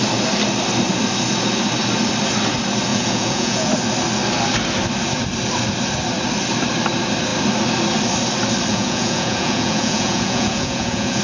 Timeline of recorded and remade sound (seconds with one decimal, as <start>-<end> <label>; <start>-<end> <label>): 0.0-2.9 recorded; 2.9-3.7 remade; 3.7-8.7 recorded; 8.7-11.2 remade